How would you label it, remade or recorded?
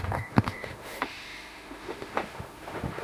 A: remade